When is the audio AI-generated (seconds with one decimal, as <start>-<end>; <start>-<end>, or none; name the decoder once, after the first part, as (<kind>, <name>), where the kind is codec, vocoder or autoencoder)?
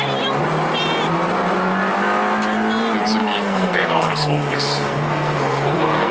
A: 3.2-6.1 (codec, SNAC)